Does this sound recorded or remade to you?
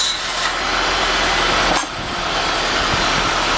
recorded